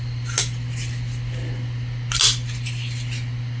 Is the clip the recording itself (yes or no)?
yes